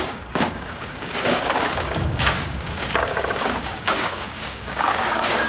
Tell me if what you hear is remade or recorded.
remade